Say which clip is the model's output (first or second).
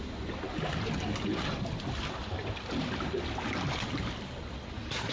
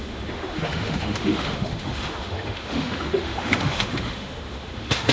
second